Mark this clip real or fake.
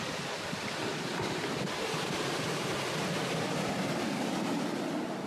real